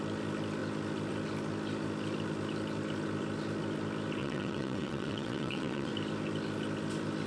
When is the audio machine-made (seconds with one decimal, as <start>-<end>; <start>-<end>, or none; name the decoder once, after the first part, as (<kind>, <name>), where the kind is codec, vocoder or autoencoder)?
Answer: 4.2-5.9 (vocoder, WaveNeXt)